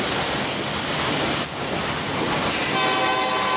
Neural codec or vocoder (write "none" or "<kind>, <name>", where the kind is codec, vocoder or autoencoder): none